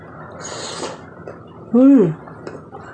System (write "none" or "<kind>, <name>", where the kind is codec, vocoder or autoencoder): none